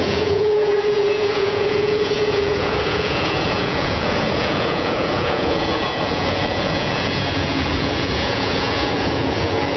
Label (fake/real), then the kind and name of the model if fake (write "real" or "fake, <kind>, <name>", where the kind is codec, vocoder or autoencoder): fake, vocoder, Vocos